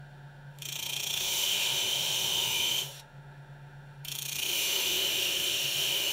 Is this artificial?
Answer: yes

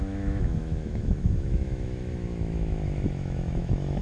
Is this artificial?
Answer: yes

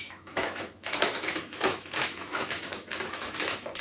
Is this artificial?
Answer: yes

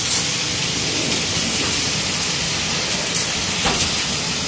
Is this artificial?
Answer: no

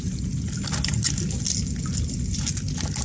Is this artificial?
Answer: no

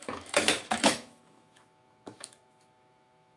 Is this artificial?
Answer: yes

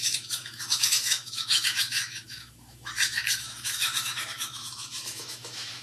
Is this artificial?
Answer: yes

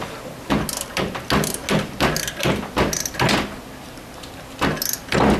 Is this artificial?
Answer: no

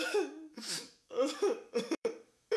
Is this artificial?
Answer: yes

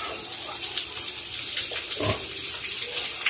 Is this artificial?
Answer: no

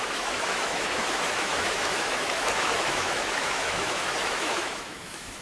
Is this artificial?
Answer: yes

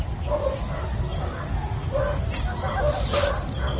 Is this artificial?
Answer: no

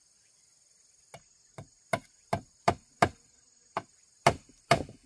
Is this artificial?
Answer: no